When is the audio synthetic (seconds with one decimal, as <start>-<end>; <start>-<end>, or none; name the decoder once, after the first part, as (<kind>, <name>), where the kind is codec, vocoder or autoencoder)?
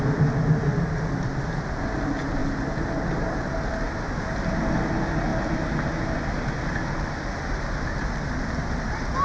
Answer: 2.4-4.4 (vocoder, BigVGAN v2); 5.3-7.4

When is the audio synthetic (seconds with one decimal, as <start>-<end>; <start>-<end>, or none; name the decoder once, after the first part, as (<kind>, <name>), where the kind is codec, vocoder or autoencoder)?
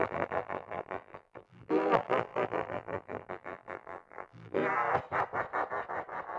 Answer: 0.0-4.6 (vocoder, BigVGAN v2)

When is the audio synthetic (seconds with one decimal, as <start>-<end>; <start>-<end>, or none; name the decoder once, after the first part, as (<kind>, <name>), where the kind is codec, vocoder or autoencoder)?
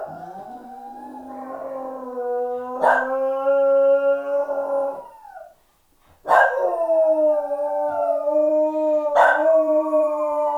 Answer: 9.4-10.6 (vocoder, BigVGAN v2)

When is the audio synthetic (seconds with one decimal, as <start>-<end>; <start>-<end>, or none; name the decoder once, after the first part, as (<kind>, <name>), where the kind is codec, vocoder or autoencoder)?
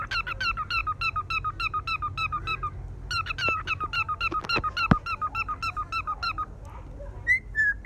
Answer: none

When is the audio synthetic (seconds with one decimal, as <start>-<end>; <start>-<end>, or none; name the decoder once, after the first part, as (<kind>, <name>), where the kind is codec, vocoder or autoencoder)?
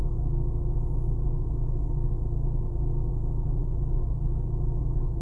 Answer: 3.6-4.5 (vocoder, BigVGAN v2)